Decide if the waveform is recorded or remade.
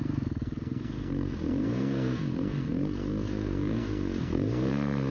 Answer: remade